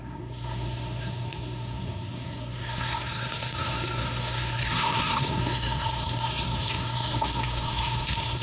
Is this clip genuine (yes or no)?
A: no